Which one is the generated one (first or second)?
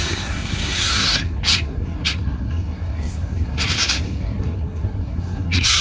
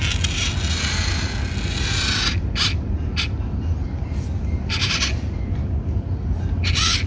first